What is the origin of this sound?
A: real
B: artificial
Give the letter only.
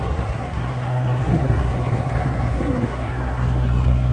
B